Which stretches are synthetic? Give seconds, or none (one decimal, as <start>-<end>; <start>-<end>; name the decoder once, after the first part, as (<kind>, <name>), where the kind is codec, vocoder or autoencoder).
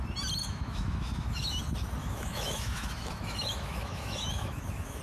0.4-1.6 (autoencoder, DAC-VAE); 2.0-5.0